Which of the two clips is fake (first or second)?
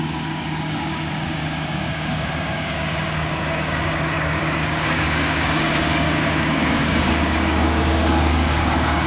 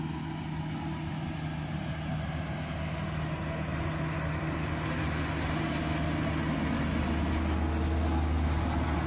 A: first